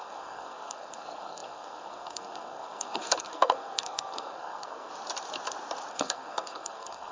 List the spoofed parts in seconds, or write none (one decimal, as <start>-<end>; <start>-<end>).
0.0-4.9; 5.9-7.1